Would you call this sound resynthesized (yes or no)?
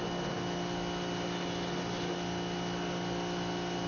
no